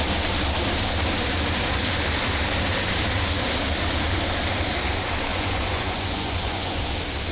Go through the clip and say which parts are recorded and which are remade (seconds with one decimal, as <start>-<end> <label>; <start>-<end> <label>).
0.0-5.3 recorded; 5.3-6.8 remade; 6.8-7.3 recorded